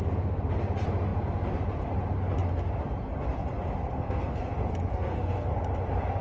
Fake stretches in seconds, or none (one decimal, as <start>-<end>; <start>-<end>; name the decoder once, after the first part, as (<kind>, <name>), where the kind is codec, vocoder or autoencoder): 3.9-4.5 (codec, SNAC); 4.9-5.5